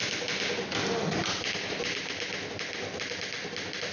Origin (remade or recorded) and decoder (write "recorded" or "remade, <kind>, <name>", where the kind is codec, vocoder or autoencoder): recorded